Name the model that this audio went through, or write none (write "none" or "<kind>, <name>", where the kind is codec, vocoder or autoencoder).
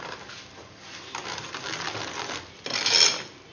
none